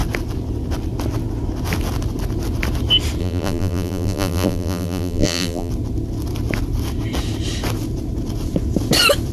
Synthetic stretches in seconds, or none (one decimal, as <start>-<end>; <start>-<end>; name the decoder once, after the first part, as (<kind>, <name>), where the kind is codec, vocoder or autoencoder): 3.2-5.7 (vocoder, BigVGAN v2)